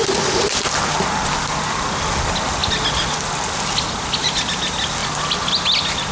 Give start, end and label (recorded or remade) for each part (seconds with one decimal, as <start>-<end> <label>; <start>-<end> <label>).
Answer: 0.0-6.1 recorded